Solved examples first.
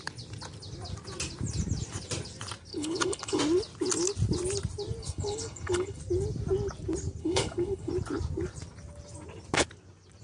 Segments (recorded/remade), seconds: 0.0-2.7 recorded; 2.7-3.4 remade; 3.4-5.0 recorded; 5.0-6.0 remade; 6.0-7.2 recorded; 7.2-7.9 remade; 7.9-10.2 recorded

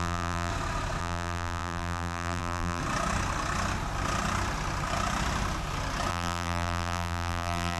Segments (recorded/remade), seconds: 0.0-0.5 remade; 0.5-1.0 recorded; 1.0-2.8 remade; 2.8-6.1 recorded; 6.1-7.8 remade

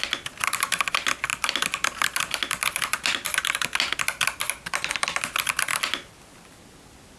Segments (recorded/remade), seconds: 0.0-7.2 recorded

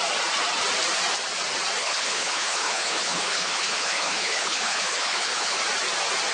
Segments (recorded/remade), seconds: 0.0-1.8 recorded; 1.8-5.6 remade; 5.6-6.3 recorded

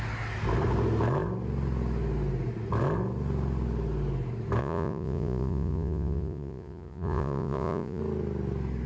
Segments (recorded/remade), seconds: 0.0-4.6 recorded; 4.6-8.0 remade; 8.0-8.9 recorded

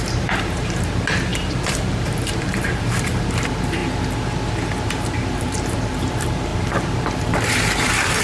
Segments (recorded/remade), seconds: 0.0-3.8 remade; 3.8-4.8 recorded; 4.8-8.2 remade

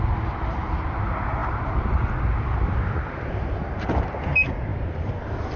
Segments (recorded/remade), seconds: 0.0-5.6 recorded

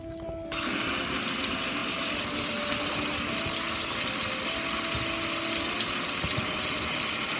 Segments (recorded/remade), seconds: 0.0-7.4 recorded